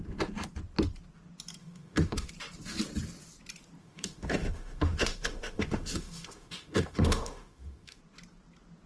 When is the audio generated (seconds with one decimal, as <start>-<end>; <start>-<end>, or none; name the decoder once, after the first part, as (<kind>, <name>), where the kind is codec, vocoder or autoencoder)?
1.6-2.3 (autoencoder, DAC-VAE); 3.8-8.0